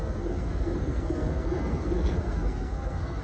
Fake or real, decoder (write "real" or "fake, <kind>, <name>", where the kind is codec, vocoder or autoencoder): fake, codec, SNAC